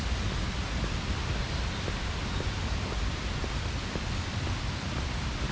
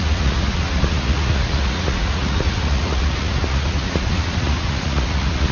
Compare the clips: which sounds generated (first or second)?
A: second